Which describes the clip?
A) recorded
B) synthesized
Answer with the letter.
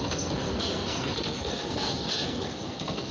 B